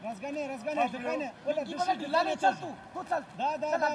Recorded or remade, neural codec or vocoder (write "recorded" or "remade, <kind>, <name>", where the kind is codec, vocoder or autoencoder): recorded